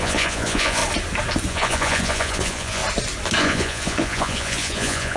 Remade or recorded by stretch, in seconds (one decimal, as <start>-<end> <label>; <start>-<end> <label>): 0.0-0.8 remade; 0.8-1.5 recorded; 1.5-2.8 remade; 2.8-3.4 recorded; 3.4-5.2 remade